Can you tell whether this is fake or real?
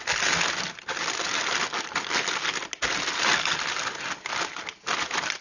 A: real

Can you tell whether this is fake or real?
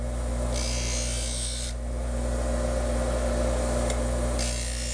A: real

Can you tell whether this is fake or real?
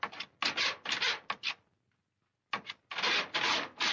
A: real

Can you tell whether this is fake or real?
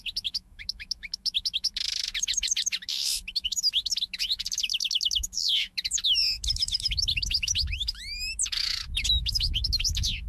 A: fake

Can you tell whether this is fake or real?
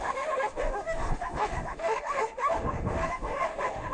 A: fake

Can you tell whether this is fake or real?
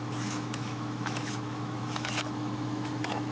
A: fake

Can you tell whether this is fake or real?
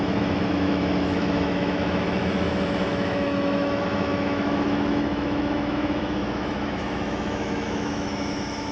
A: fake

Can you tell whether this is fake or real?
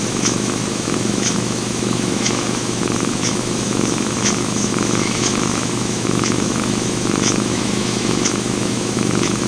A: fake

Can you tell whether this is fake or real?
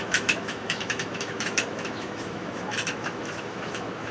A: fake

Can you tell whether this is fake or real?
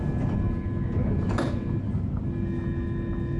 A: real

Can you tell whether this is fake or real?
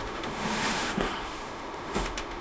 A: fake